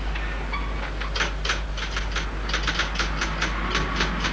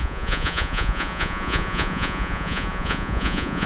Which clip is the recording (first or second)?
first